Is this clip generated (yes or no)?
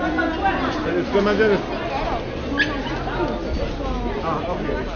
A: no